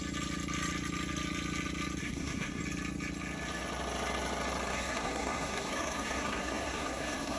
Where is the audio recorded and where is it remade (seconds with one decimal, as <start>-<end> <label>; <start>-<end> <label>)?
0.0-2.0 recorded; 2.0-2.6 remade; 2.6-4.7 recorded; 4.7-7.4 remade